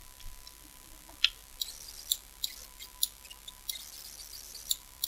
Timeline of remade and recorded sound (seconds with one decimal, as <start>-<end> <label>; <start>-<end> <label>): 0.0-0.6 recorded; 0.6-1.4 remade; 1.4-4.5 recorded; 4.5-5.1 remade